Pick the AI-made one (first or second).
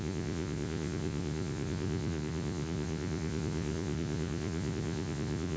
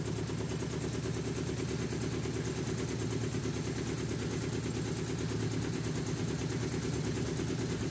first